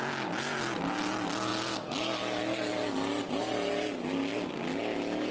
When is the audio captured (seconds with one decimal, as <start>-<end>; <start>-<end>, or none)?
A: 0.0-5.3